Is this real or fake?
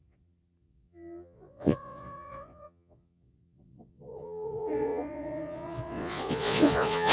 fake